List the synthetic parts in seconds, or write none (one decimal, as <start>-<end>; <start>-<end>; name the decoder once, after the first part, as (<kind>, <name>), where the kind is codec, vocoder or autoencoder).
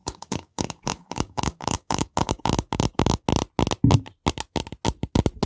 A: 0.0-3.3 (codec, DAC)